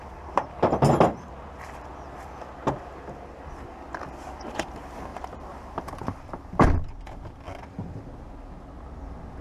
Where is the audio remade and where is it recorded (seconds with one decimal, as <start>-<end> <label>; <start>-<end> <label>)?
0.0-5.1 recorded; 5.1-6.3 remade; 6.3-9.4 recorded